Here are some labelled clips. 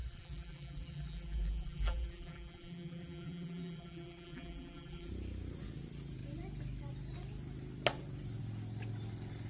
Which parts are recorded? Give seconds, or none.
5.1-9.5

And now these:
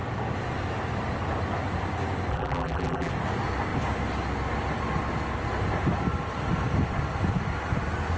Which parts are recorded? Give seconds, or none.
0.0-2.3; 3.1-8.2